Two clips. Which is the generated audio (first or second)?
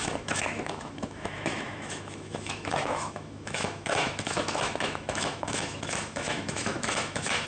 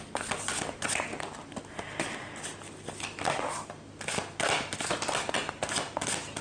first